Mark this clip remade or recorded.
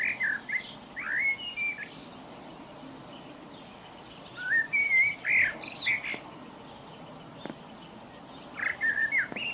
recorded